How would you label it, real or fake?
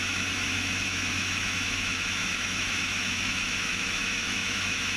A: fake